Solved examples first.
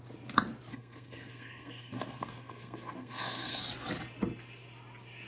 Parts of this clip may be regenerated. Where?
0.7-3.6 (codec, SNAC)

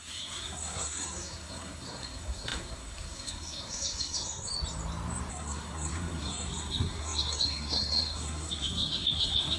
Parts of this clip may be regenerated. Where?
0.0-4.5 (codec, SNAC); 5.3-9.6